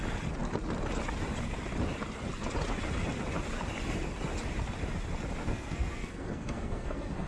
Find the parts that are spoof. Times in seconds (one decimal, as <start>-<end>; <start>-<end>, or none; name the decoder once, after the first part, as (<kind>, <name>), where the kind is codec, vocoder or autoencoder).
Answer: 5.4-7.3 (codec, SNAC)